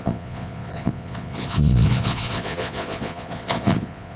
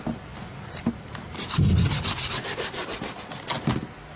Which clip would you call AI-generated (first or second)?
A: first